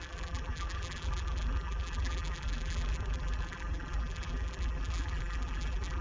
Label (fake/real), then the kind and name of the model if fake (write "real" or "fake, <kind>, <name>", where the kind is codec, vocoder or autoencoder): fake, vocoder, BigVGAN v2